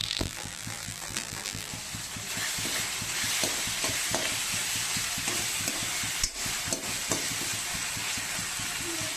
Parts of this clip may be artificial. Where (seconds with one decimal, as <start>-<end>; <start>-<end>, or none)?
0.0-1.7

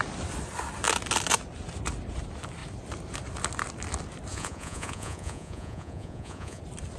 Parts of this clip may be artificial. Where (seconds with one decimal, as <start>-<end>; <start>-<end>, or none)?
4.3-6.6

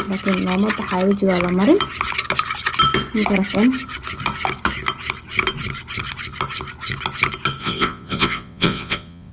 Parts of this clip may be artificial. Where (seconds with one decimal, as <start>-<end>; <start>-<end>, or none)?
7.6-9.3

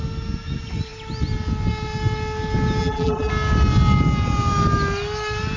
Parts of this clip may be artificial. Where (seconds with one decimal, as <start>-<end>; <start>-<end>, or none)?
2.8-3.3

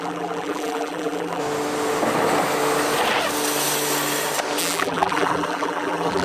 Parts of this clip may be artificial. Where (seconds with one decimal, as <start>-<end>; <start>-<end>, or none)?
0.0-1.4; 4.6-6.2

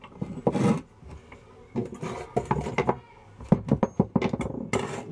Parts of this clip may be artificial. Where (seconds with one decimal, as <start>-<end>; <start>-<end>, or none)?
none